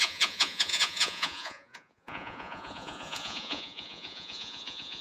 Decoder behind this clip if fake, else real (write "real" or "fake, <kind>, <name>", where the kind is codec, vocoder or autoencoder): fake, vocoder, Vocos